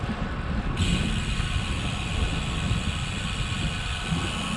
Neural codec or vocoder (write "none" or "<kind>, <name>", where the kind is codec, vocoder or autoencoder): none